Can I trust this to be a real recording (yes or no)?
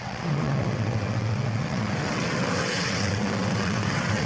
no